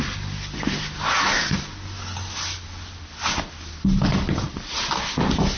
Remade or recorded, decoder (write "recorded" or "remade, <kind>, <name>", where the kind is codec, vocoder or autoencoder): recorded